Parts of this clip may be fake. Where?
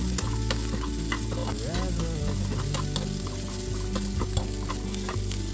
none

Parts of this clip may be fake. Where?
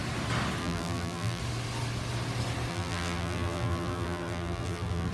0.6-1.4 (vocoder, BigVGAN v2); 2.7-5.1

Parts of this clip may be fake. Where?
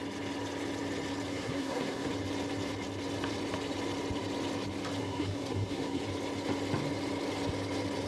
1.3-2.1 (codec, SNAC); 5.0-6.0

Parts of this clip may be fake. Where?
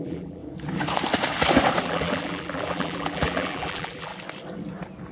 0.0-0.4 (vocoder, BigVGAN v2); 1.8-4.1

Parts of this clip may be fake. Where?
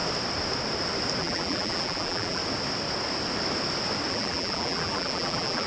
1.2-2.4 (vocoder, BigVGAN v2); 4.1-5.7